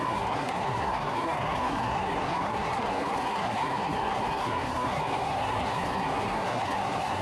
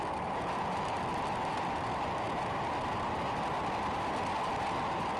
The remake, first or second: first